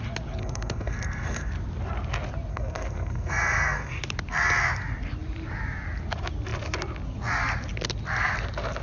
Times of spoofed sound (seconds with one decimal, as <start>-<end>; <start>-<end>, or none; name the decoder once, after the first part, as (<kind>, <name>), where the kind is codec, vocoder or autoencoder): 0.4-1.5 (codec, SNAC); 2.5-4.0